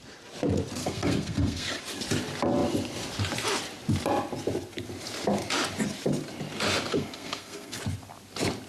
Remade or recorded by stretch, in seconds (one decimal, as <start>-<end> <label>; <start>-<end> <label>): 0.0-0.8 recorded; 0.8-1.8 remade; 1.8-6.9 recorded; 6.9-7.8 remade; 7.8-8.7 recorded